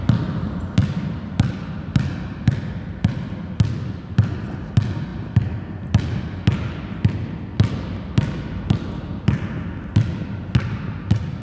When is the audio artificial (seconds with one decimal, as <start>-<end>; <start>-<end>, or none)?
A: 0.8-3.3; 9.1-9.8